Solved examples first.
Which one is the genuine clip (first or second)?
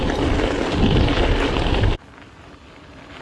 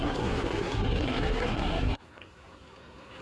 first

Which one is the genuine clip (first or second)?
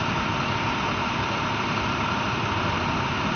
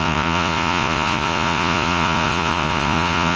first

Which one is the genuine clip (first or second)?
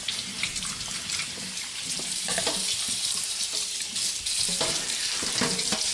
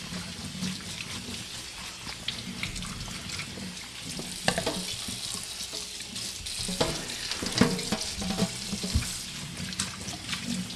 second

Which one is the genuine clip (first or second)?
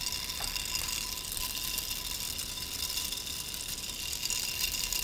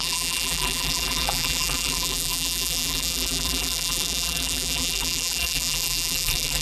first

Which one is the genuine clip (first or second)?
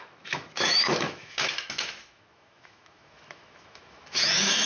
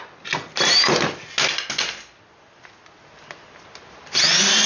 second